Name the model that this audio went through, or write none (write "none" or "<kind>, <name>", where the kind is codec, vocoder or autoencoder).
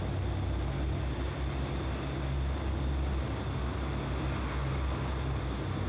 none